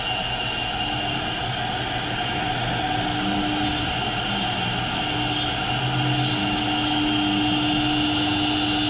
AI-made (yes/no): no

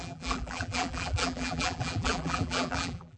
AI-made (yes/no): yes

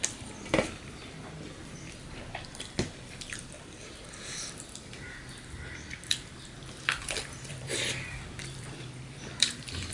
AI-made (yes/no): yes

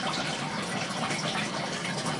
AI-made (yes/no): no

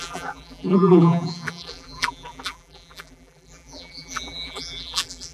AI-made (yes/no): yes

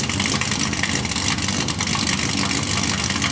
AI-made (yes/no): yes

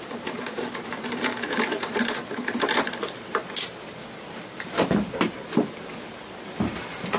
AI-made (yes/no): yes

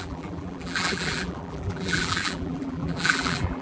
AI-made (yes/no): yes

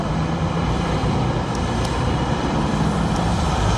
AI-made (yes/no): yes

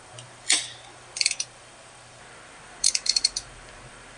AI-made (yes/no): yes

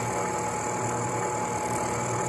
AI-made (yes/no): no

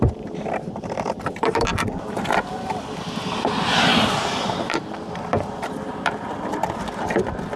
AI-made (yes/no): yes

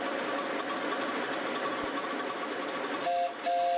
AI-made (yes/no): no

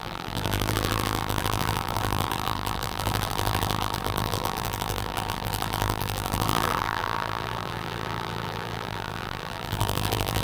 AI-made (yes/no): yes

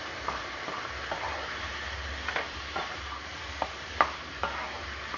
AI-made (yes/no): yes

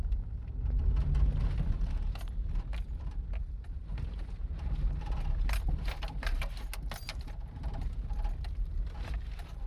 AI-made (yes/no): no